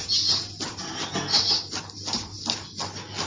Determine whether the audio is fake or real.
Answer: real